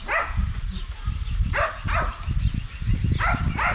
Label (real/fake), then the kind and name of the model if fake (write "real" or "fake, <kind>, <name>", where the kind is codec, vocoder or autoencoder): real